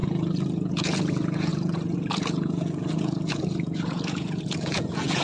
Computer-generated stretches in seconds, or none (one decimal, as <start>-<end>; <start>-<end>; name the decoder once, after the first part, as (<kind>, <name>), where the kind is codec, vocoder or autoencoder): 0.0-5.2 (vocoder, Vocos)